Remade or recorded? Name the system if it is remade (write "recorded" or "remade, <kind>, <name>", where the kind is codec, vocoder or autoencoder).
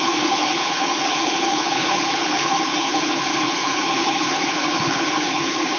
remade, codec, HILCodec